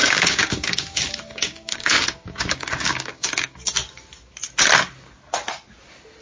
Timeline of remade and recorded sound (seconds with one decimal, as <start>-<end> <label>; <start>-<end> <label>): 0.0-3.7 remade; 3.7-6.2 recorded